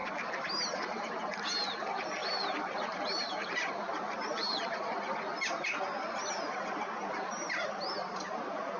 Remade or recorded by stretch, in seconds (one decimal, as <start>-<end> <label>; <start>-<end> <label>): 0.0-1.1 remade; 1.1-7.0 recorded; 7.0-8.2 remade; 8.2-8.8 recorded